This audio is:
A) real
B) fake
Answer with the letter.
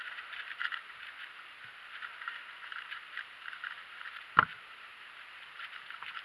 B